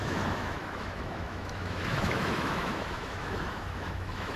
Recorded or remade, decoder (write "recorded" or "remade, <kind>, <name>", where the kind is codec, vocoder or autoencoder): remade, autoencoder, DAC-VAE